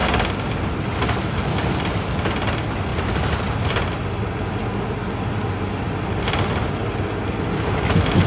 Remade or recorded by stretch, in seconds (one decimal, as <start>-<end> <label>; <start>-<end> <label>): 0.0-8.3 recorded